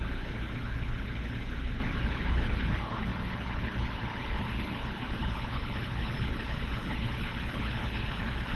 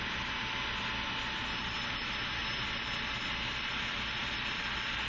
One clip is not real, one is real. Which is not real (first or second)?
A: first